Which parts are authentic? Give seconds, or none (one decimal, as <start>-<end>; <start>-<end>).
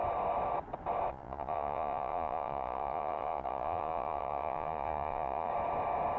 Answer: 0.0-1.1; 5.5-6.2